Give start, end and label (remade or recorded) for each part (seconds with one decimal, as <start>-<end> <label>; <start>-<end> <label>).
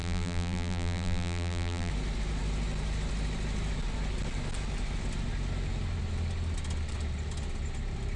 0.0-1.9 remade; 1.9-8.2 recorded